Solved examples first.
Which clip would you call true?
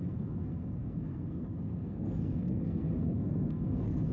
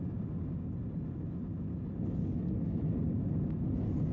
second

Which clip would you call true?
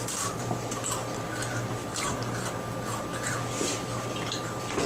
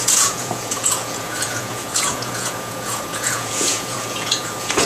first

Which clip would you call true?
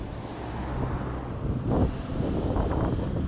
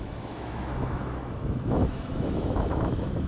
first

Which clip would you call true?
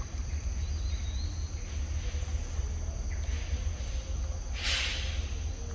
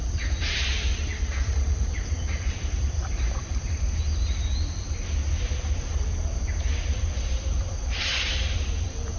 first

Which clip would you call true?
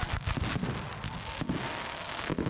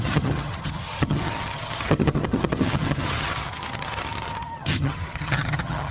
first